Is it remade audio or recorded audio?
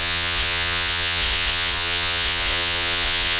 remade